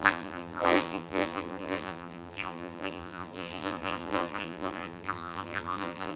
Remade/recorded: remade